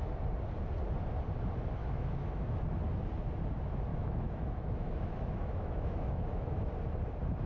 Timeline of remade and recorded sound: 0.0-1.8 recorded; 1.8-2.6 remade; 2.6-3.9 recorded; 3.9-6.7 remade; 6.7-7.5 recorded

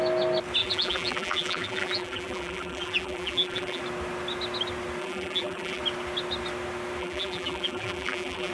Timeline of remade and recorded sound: 0.0-0.6 recorded; 0.6-3.8 remade; 3.8-5.0 recorded; 5.0-5.8 remade; 5.8-7.0 recorded; 7.0-8.5 remade

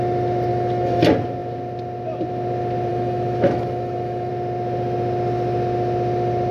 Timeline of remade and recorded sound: 0.0-0.5 recorded; 0.5-1.0 remade; 1.0-2.9 recorded; 2.9-4.3 remade; 4.3-6.5 recorded

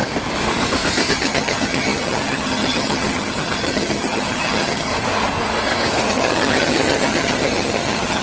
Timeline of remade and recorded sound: 0.0-1.1 recorded; 1.1-4.9 remade; 4.9-6.1 recorded; 6.1-8.2 remade

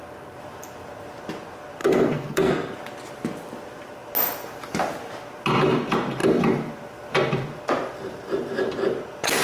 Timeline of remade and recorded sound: 0.0-1.8 recorded; 1.8-2.5 remade; 2.5-9.4 recorded

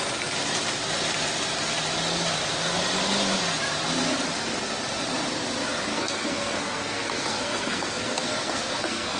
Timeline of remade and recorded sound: 0.0-5.9 recorded; 5.9-9.2 remade

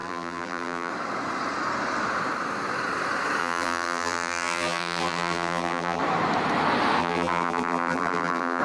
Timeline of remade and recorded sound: 0.0-0.9 remade; 0.9-3.4 recorded; 3.4-6.0 remade; 6.0-7.0 recorded; 7.0-8.6 remade

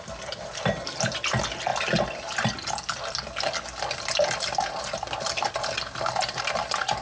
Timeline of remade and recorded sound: 0.0-7.0 recorded